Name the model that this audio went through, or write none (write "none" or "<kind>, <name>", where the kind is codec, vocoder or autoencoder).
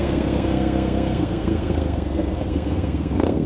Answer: codec, SNAC